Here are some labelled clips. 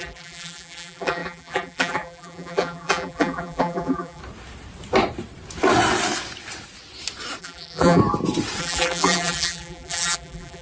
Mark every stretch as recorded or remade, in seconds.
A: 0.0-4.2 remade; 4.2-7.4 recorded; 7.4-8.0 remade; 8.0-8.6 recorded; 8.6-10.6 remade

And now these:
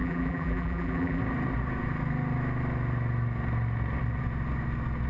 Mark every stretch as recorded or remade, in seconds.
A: 0.0-1.2 remade; 1.2-5.1 recorded

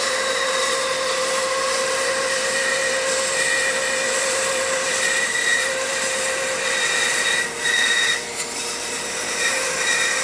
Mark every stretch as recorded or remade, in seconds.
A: 0.0-2.8 remade; 2.8-4.2 recorded; 4.2-10.2 remade

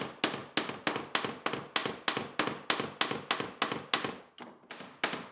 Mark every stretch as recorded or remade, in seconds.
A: 0.0-5.3 recorded

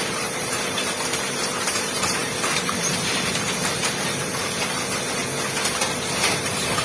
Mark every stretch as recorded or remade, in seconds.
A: 0.0-5.2 remade; 5.2-6.8 recorded